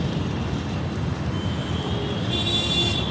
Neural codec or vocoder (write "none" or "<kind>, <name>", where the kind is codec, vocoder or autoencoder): none